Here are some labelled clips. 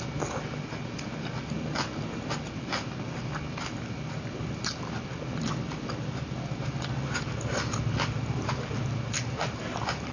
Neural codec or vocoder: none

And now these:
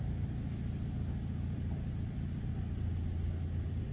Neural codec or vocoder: none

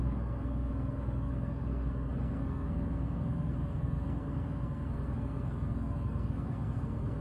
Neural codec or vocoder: codec, SNAC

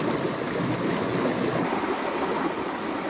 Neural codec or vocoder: none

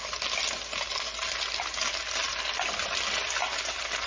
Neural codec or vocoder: none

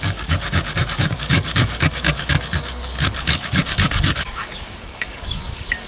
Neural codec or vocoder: codec, DAC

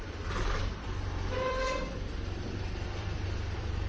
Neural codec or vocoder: vocoder, BigVGAN v2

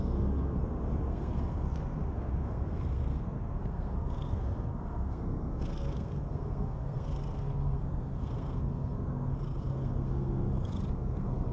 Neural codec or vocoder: codec, SNAC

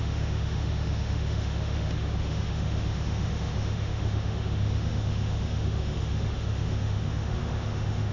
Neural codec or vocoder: autoencoder, DAC-VAE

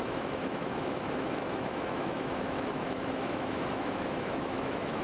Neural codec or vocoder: autoencoder, DAC-VAE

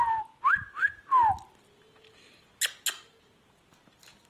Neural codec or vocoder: none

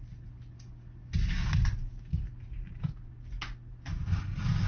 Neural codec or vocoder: none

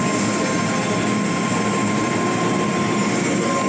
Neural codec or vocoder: none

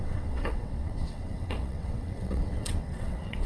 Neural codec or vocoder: vocoder, WaveNeXt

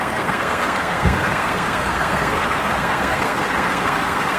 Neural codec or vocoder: codec, SNAC